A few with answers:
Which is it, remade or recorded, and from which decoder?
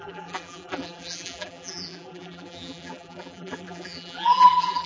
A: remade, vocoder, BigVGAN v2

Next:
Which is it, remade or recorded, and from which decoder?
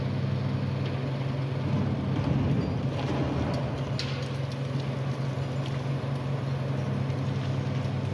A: recorded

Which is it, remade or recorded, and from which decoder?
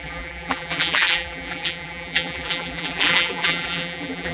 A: remade, vocoder, BigVGAN v2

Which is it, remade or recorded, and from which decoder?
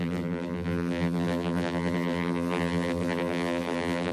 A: remade, vocoder, BigVGAN v2